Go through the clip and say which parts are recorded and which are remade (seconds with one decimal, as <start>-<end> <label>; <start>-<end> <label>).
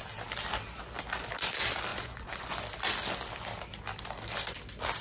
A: 0.0-1.9 recorded; 1.9-2.6 remade; 2.6-5.0 recorded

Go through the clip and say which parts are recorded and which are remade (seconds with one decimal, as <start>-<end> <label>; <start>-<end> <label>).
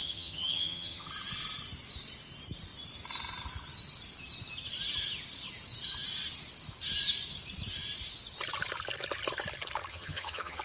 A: 0.0-1.1 remade; 1.1-9.9 recorded; 9.9-10.6 remade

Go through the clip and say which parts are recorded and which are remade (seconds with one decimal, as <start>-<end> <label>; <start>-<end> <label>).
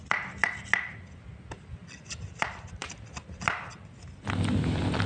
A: 0.0-5.1 recorded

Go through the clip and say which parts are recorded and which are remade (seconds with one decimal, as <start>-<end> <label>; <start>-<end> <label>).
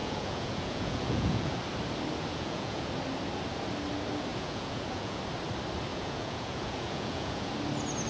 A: 0.0-1.6 remade; 1.6-2.3 recorded; 2.3-2.9 remade; 2.9-4.3 recorded; 4.3-5.2 remade; 5.2-5.9 recorded; 5.9-7.5 remade; 7.5-8.1 recorded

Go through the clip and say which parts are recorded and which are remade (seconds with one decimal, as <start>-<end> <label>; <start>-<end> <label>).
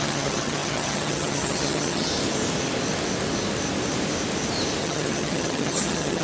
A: 0.0-2.1 remade; 2.1-4.8 recorded; 4.8-6.2 remade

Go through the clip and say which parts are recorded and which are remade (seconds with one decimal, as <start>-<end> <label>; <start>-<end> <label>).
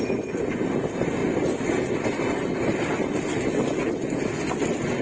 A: 0.0-5.0 recorded